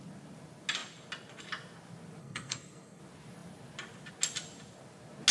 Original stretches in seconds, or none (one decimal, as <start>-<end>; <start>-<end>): 0.0-2.2; 3.0-5.3